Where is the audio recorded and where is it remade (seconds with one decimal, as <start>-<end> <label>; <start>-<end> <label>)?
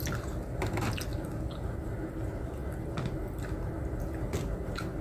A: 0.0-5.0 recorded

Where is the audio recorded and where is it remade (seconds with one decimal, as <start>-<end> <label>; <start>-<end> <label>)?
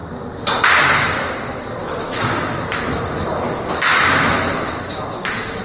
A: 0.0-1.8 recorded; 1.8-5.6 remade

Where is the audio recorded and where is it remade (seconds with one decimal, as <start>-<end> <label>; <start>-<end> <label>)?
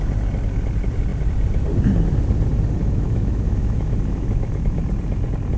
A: 0.0-2.8 recorded; 2.8-4.8 remade; 4.8-5.6 recorded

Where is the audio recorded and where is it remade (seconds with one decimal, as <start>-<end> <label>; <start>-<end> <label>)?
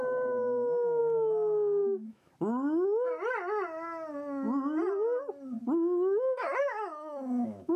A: 0.0-1.0 recorded; 1.0-2.3 remade; 2.3-6.6 recorded; 6.6-7.8 remade